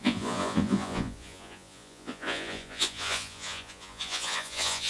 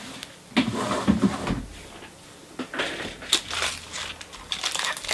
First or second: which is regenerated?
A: first